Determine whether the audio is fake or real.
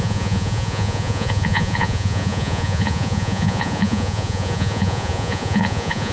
fake